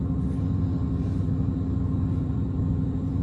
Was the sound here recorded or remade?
recorded